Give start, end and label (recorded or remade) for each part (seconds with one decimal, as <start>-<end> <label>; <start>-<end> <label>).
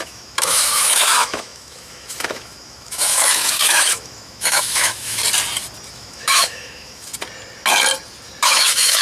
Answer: 0.0-5.2 remade; 5.2-5.9 recorded; 5.9-7.1 remade; 7.1-8.4 recorded; 8.4-9.0 remade